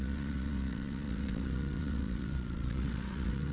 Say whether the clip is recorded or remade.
remade